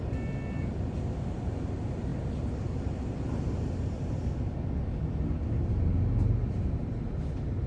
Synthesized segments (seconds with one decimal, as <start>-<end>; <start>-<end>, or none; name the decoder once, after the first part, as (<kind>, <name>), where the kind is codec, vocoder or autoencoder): none